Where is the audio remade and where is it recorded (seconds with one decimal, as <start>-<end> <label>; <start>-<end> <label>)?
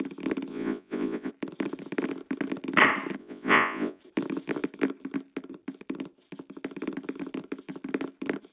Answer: 0.0-0.5 recorded; 0.5-1.3 remade; 1.3-3.2 recorded; 3.2-4.0 remade; 4.0-8.5 recorded